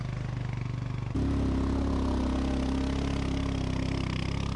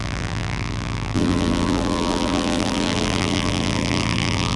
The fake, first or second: second